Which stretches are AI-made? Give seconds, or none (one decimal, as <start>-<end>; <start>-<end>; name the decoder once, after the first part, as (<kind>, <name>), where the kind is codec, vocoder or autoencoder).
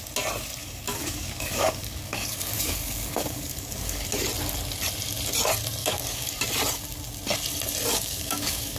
0.6-4.1 (codec, DAC); 5.8-6.4; 7.9-8.8